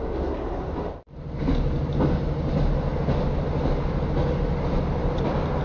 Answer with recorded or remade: recorded